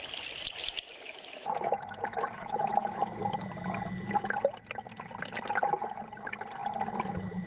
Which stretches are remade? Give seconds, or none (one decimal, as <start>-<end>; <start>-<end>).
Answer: 0.6-3.2

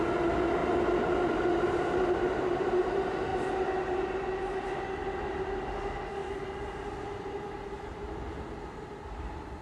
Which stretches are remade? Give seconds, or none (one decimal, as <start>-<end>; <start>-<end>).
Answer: none

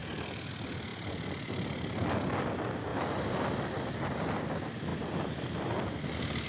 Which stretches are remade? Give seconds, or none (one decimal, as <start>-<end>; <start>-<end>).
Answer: none

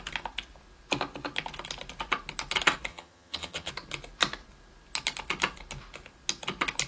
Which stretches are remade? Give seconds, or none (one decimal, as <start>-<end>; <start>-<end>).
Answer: 2.9-3.7